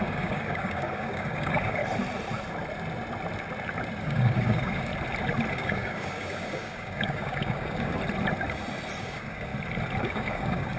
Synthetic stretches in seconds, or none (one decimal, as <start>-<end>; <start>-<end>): 0.0-1.8; 4.0-4.9; 5.5-8.0; 9.0-9.5; 10.0-10.8